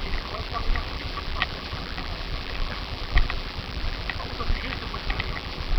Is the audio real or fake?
fake